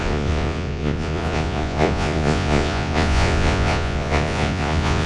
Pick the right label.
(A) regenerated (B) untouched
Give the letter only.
A